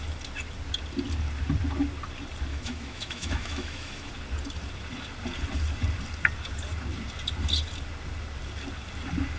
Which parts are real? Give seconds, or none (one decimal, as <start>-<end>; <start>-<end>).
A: 0.0-2.5; 4.1-9.4